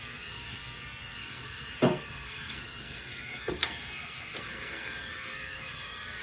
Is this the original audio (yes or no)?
no